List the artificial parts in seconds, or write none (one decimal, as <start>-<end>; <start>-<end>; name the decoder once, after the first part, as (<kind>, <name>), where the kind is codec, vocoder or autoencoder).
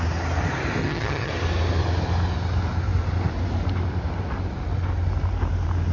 0.8-1.3 (vocoder, HiFi-GAN)